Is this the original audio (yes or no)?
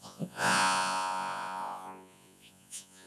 no